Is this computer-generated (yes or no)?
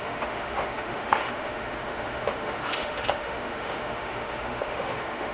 yes